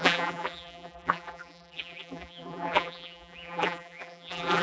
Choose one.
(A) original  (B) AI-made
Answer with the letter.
B